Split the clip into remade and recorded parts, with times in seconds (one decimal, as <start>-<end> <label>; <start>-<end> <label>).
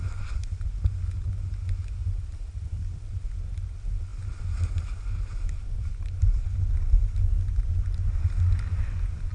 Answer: 0.0-9.3 recorded